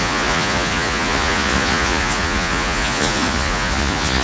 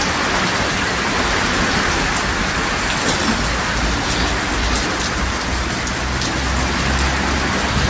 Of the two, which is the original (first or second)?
second